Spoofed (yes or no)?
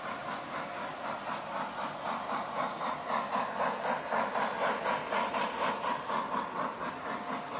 no